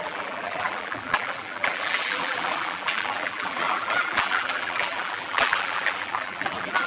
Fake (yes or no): yes